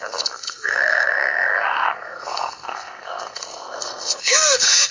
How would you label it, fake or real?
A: fake